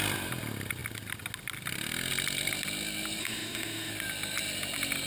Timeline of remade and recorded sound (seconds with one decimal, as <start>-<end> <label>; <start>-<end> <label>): 0.0-3.2 recorded; 3.2-3.9 remade; 3.9-5.1 recorded